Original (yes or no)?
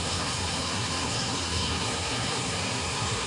no